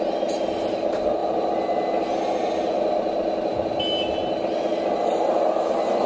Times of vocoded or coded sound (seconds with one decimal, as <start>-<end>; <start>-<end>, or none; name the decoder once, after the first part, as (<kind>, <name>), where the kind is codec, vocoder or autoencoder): none